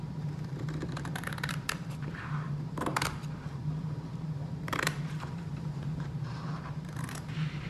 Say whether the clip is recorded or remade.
remade